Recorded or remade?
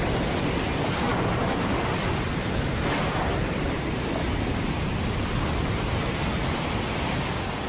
recorded